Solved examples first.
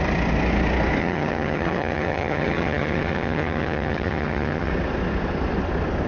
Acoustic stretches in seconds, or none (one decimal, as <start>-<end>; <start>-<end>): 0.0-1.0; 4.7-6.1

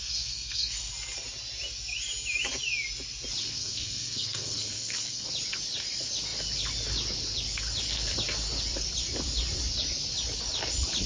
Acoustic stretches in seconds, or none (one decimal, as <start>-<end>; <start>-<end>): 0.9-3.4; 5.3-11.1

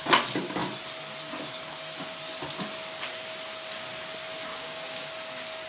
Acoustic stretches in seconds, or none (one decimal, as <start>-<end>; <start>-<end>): 0.0-4.5; 5.1-5.7

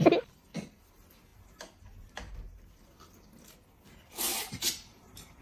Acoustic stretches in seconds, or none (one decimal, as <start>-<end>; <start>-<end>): 0.0-4.3

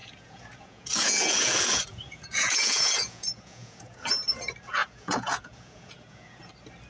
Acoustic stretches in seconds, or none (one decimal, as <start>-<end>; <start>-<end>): 4.1-4.8; 6.4-6.9

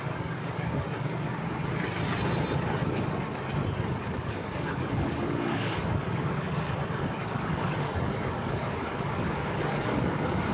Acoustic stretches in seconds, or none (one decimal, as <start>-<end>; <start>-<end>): 1.6-4.2